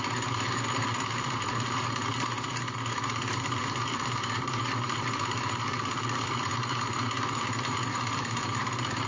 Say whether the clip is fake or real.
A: fake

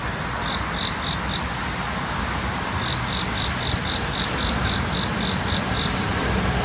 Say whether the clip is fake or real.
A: real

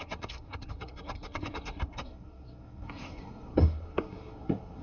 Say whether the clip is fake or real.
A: fake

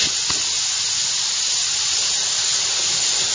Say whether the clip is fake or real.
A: real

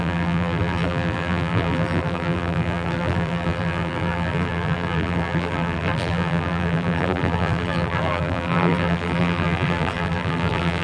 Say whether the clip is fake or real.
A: fake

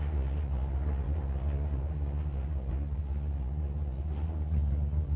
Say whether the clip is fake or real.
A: fake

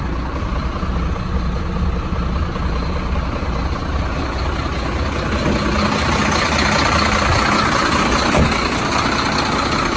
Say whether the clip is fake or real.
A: real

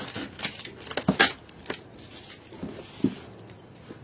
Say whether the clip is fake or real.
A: real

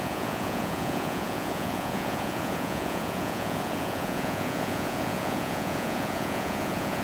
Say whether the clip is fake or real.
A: fake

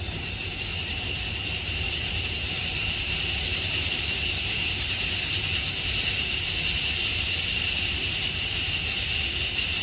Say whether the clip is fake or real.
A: fake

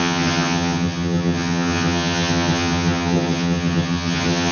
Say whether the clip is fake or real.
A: fake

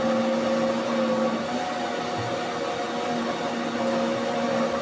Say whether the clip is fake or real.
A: real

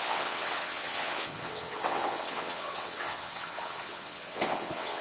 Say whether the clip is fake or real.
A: fake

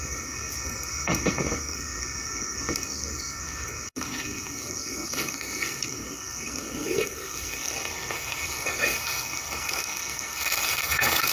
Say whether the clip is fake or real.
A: fake